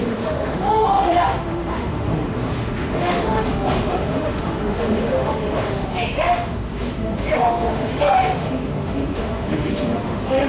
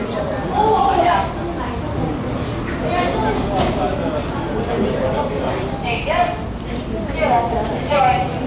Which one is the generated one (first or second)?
first